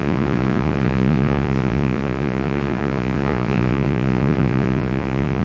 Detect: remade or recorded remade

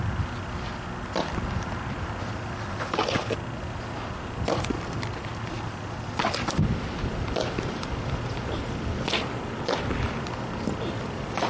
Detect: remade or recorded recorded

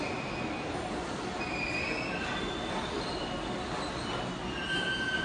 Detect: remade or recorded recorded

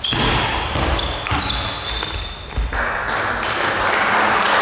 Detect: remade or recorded recorded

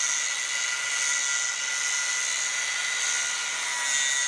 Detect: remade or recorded recorded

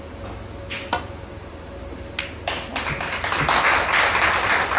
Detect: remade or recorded recorded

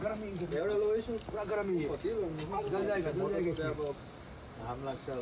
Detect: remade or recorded recorded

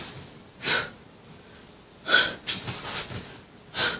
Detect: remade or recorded recorded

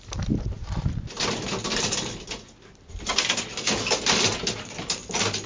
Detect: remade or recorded recorded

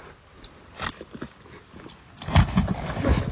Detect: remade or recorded recorded